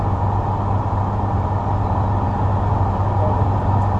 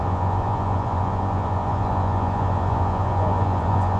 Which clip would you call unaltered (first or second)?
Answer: first